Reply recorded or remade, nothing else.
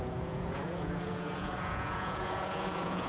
remade